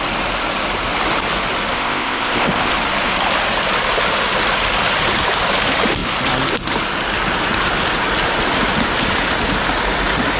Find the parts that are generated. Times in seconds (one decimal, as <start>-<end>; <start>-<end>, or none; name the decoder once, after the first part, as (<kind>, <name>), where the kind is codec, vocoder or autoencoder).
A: 1.7-2.7 (codec, ZipCodec)